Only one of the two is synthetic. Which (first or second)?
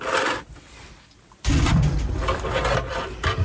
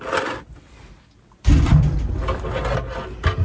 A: first